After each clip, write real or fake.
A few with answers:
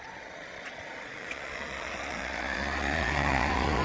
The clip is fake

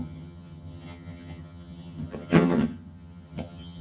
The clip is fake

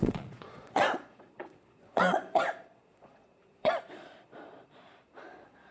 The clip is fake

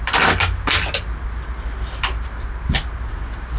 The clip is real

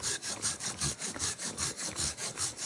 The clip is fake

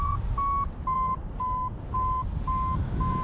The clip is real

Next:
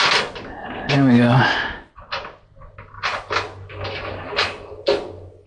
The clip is real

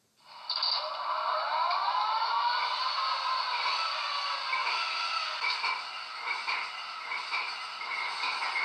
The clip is real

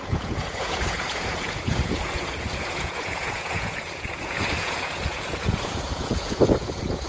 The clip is fake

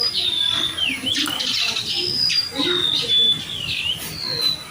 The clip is real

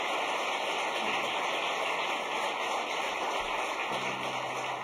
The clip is real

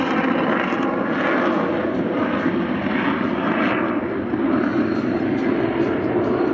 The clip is real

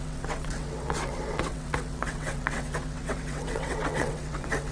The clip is fake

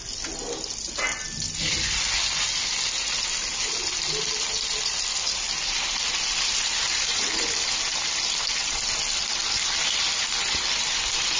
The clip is real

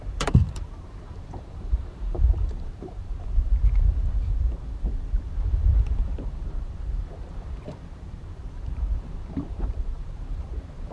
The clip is fake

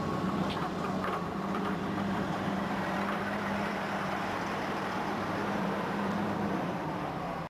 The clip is fake